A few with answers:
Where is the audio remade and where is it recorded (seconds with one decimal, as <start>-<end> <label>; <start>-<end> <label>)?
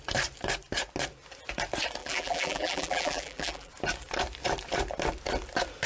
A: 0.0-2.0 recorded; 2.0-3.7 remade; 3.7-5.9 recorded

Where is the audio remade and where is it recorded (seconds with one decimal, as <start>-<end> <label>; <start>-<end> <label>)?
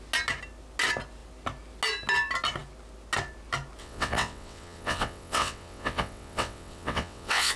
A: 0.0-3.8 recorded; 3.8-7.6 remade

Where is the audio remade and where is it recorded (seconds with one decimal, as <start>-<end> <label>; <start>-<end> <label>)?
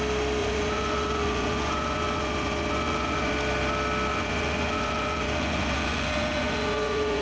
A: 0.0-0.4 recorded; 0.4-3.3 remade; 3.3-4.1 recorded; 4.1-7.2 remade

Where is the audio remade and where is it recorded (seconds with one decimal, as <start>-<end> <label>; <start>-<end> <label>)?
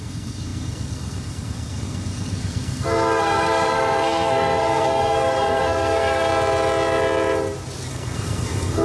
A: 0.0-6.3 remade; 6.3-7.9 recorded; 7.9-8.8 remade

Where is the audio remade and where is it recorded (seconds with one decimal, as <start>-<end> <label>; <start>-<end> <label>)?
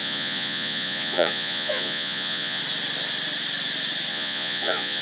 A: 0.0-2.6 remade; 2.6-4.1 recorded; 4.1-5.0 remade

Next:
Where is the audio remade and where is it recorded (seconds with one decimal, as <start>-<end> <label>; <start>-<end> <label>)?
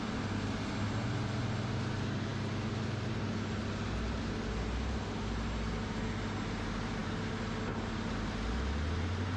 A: 0.0-9.4 recorded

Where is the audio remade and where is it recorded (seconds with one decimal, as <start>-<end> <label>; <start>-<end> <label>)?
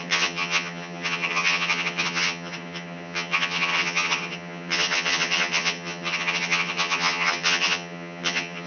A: 0.0-8.7 remade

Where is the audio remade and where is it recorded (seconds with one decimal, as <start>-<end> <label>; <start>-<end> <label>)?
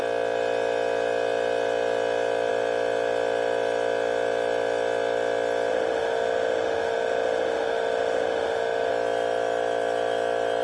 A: 0.0-5.7 recorded; 5.7-8.9 remade; 8.9-10.6 recorded